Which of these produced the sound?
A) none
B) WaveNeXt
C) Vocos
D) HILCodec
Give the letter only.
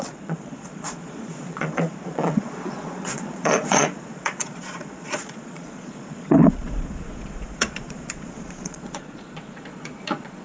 C